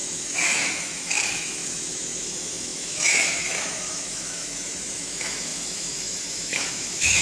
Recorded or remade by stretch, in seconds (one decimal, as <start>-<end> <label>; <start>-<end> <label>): 0.0-7.2 remade